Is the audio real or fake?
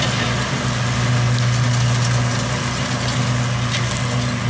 real